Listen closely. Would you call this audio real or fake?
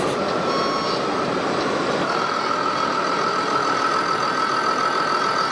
real